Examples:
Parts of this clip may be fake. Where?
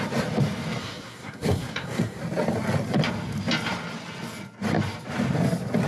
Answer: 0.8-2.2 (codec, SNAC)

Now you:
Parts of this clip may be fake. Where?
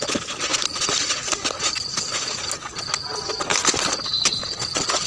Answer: none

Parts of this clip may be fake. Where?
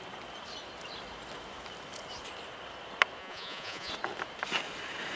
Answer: 3.2-3.9 (vocoder, Vocos)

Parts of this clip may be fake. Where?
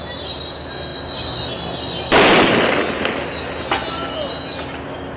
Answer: none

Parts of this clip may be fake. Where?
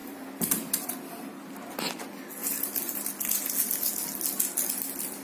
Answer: 0.0-1.0 (vocoder, BigVGAN v2); 2.4-3.1